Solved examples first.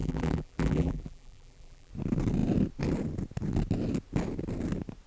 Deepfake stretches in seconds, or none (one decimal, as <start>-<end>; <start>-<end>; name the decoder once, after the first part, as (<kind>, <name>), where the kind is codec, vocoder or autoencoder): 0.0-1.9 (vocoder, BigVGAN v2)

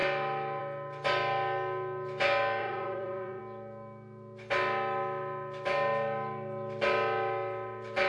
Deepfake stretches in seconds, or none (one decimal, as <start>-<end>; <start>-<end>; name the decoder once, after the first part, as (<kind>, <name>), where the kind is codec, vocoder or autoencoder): 2.6-3.4 (vocoder, Vocos)

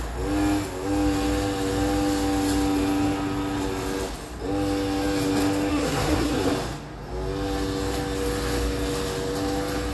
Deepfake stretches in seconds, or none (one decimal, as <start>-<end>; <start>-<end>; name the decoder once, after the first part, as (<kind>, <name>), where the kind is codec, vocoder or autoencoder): 5.7-6.5 (codec, SNAC)

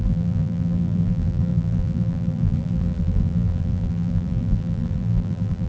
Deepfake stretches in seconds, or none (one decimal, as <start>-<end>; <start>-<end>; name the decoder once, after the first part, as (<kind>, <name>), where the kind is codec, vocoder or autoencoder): 0.0-5.7 (vocoder, BigVGAN v2)

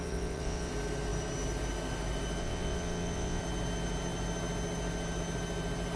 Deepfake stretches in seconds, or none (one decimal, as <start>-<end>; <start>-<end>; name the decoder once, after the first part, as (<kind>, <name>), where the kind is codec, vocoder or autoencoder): 0.0-0.7 (vocoder, WaveNeXt); 2.4-3.4

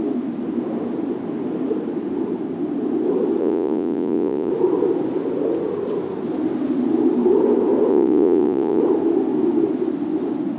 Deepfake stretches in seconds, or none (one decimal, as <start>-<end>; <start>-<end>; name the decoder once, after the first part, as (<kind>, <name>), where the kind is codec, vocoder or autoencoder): 3.4-4.5 (vocoder, Vocos); 7.9-8.8

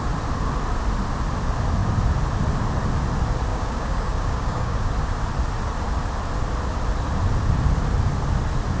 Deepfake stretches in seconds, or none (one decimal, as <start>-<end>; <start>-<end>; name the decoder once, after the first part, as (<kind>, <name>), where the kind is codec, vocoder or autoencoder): 3.5-4.9 (codec, DAC)

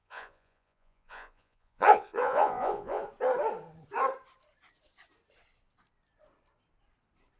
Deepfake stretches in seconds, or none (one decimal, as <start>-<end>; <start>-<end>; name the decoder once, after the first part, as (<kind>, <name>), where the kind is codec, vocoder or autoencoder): 0.0-3.0 (vocoder, Vocos)